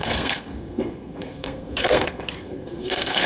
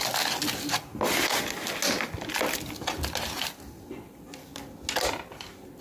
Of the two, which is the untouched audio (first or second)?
second